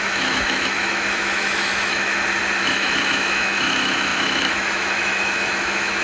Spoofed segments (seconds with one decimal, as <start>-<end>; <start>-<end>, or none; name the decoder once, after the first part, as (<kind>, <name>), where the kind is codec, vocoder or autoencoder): 0.0-2.1 (autoencoder, DAC-VAE); 2.6-6.0